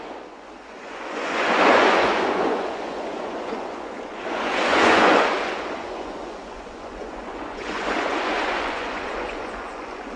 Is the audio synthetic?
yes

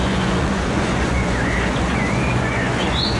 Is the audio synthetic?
yes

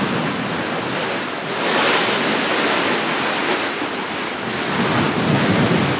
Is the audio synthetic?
no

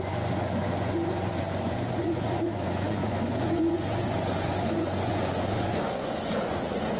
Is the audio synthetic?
yes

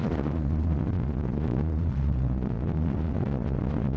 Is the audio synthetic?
yes